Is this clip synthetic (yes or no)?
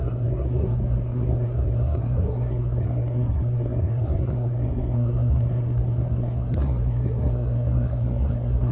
yes